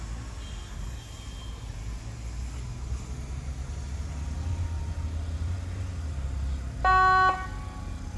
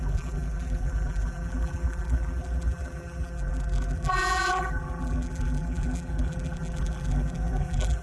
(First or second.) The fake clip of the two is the second